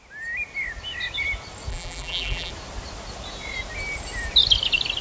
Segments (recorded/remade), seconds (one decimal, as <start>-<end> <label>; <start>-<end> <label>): 0.0-1.7 recorded; 1.7-2.5 remade; 2.5-5.0 recorded